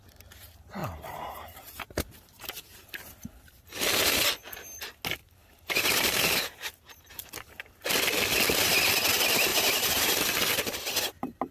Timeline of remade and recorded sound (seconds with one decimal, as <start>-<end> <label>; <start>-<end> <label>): 0.0-0.8 recorded; 0.8-2.8 remade; 2.8-5.4 recorded; 5.4-7.3 remade; 7.3-9.5 recorded; 9.5-10.4 remade; 10.4-11.5 recorded